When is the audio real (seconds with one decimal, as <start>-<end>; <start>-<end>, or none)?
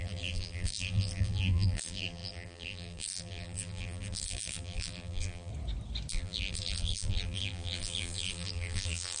5.5-6.1